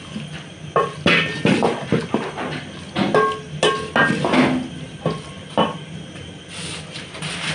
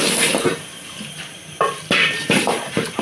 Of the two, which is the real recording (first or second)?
first